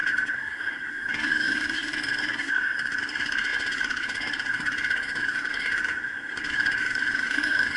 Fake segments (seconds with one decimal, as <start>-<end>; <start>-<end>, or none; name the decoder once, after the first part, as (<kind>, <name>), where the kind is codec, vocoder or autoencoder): 0.0-7.8 (codec, SNAC)